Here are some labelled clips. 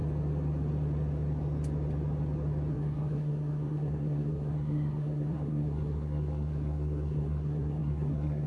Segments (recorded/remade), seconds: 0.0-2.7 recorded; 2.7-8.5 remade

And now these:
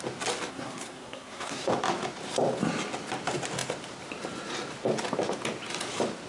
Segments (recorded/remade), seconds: 0.0-0.5 recorded; 0.5-1.7 remade; 1.7-6.3 recorded

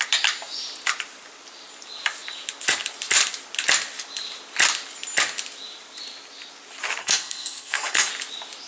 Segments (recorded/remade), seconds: 0.0-7.0 recorded; 7.0-8.1 remade; 8.1-8.7 recorded

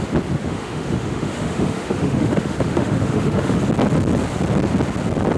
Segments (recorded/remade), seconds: 0.0-0.4 recorded; 0.4-3.6 remade; 3.6-5.4 recorded

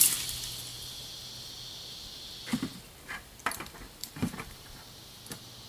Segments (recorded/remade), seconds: 0.0-0.7 recorded; 0.7-1.5 remade; 1.5-4.0 recorded; 4.0-5.2 remade; 5.2-5.7 recorded